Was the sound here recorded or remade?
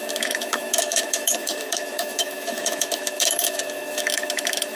remade